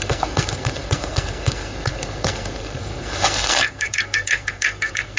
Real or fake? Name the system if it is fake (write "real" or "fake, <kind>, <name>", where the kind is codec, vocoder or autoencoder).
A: fake, codec, SNAC